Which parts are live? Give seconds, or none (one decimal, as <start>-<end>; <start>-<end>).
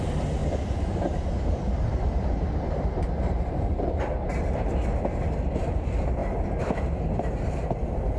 0.0-0.4; 4.4-8.2